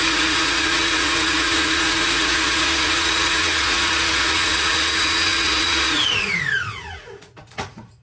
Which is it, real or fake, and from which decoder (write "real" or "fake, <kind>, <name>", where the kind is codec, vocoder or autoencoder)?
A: fake, vocoder, Vocos